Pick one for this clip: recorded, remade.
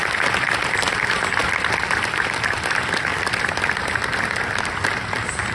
recorded